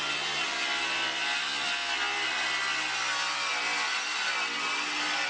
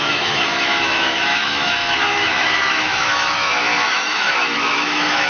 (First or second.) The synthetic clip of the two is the second